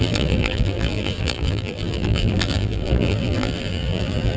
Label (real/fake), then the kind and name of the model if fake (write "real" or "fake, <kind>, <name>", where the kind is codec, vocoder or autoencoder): fake, vocoder, BigVGAN v2